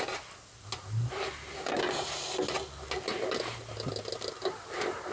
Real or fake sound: real